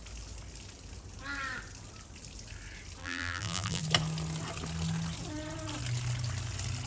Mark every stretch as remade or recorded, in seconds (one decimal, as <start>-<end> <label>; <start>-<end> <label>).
0.0-3.0 recorded; 3.0-3.8 remade; 3.8-6.9 recorded